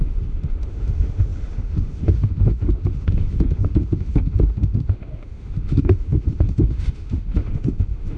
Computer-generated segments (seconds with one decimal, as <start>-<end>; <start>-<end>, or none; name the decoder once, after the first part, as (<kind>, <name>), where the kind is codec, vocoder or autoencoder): 0.0-8.2 (autoencoder, DAC-VAE)